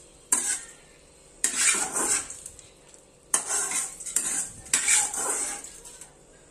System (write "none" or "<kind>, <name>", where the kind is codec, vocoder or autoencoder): vocoder, BigVGAN v2